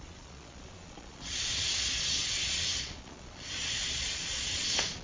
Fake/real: fake